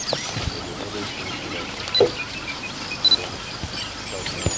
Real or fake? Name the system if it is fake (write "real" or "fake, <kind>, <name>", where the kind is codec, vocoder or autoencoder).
real